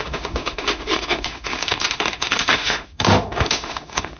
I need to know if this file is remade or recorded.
remade